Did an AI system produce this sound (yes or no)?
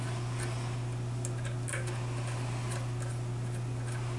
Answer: no